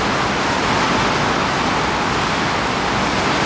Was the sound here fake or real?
real